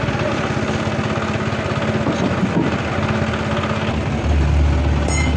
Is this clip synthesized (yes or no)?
no